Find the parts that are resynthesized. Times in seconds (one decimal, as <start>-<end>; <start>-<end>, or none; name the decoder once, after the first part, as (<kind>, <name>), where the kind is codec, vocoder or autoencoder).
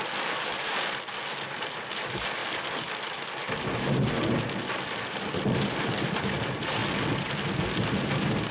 none